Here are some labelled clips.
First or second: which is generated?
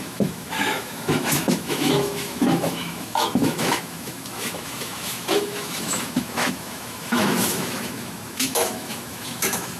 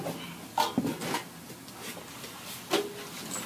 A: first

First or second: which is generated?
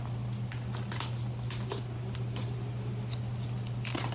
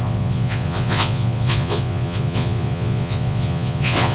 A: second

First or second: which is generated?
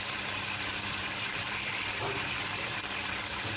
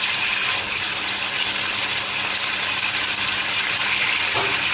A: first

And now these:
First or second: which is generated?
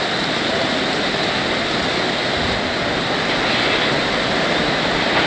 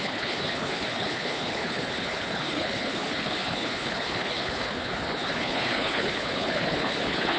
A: second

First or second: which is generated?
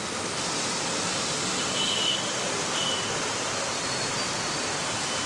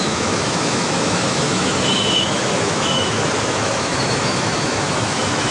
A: second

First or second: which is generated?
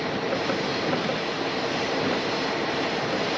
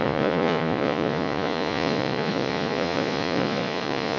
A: second